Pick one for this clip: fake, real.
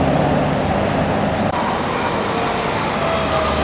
real